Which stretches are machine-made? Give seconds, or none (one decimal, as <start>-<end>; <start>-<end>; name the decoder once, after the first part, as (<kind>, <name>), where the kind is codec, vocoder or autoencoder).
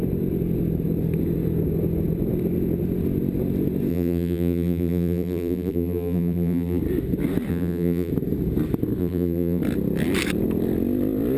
3.9-6.8 (vocoder, BigVGAN v2); 7.5-8.1; 9.0-9.6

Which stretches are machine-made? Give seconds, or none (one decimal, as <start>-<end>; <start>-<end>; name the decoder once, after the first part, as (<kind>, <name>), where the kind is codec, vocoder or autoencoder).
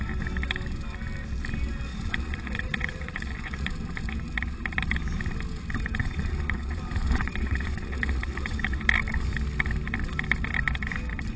1.9-3.7 (vocoder, Vocos); 6.0-8.6